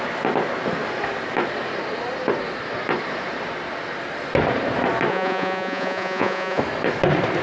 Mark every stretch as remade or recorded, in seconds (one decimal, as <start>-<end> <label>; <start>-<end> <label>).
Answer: 0.0-5.1 recorded; 5.1-6.6 remade; 6.6-7.4 recorded